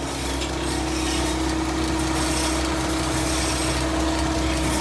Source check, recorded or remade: recorded